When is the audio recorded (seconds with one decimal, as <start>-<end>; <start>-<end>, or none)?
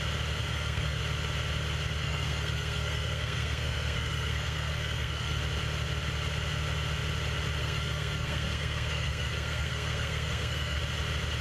0.0-0.4; 1.0-2.0; 5.4-7.6; 10.8-11.4